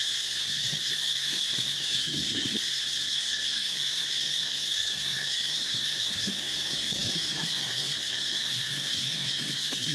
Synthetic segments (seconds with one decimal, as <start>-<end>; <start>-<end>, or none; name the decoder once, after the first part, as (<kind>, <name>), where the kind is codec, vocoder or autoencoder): 0.0-9.9 (codec, SNAC)